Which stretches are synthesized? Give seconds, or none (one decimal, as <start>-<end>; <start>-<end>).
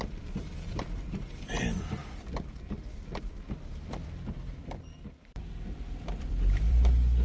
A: 0.0-7.2